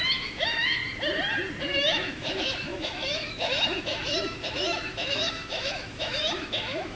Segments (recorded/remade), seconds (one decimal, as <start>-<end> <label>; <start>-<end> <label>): 0.0-0.8 remade; 0.8-1.6 recorded; 1.6-7.0 remade